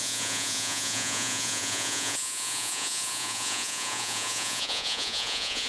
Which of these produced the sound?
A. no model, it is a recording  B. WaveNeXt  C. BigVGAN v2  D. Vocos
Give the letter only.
D